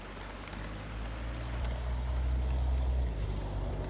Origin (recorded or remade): recorded